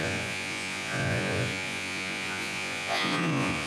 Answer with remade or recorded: remade